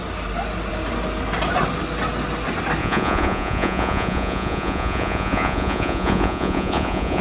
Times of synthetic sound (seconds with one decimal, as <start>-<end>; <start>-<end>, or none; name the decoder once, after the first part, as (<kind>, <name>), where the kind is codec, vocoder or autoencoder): 2.8-7.2 (vocoder, Vocos)